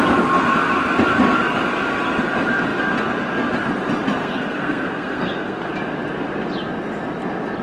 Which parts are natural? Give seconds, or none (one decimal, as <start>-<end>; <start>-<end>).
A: 0.0-4.2; 5.7-7.6